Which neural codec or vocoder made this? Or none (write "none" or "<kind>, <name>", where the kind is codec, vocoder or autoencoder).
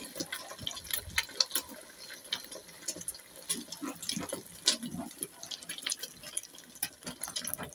none